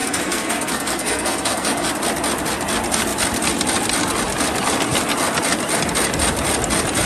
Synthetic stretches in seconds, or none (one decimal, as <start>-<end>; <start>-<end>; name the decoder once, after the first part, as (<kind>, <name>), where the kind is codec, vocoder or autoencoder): 0.0-1.9 (codec, SNAC)